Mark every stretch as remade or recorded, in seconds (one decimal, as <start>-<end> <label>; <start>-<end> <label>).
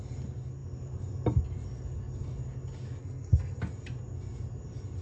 0.0-3.0 recorded; 3.0-3.6 remade; 3.6-5.0 recorded